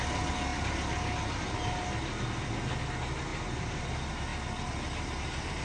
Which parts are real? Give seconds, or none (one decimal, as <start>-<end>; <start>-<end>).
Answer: 0.0-3.3; 3.8-5.6